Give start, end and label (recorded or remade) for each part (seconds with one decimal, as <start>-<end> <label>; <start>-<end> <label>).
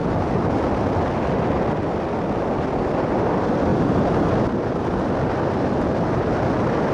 0.0-6.9 recorded